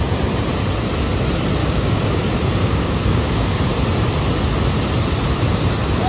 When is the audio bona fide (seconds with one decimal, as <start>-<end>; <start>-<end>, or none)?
0.0-1.6; 2.2-2.6; 3.6-6.1